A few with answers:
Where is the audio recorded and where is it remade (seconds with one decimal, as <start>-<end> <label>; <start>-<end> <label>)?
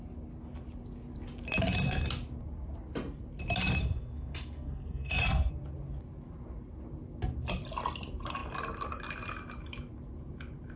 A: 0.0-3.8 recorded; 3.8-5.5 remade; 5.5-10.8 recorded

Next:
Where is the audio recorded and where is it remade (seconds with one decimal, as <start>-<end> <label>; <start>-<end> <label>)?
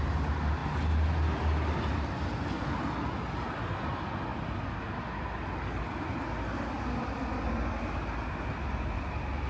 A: 0.0-9.5 recorded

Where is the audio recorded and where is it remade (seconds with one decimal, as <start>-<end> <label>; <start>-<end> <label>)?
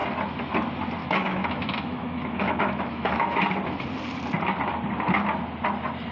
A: 0.0-1.0 recorded; 1.0-3.5 remade; 3.5-6.1 recorded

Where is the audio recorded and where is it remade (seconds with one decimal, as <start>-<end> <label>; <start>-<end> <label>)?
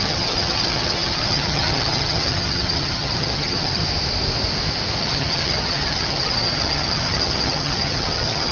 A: 0.0-3.8 remade; 3.8-5.0 recorded; 5.0-8.5 remade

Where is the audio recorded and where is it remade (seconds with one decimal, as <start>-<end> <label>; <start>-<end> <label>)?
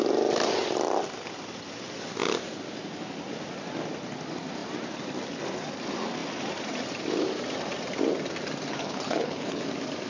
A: 0.0-8.7 recorded; 8.7-9.6 remade; 9.6-10.1 recorded